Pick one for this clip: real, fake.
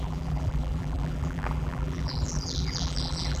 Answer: fake